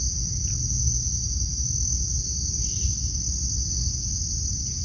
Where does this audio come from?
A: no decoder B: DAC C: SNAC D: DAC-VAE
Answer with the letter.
A